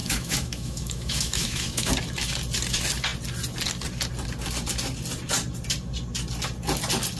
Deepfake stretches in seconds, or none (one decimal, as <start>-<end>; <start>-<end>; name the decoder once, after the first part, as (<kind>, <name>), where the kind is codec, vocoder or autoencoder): 0.0-1.9 (autoencoder, DAC-VAE)